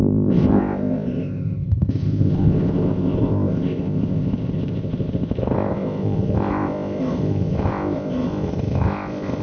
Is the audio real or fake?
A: fake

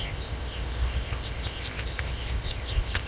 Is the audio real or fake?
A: fake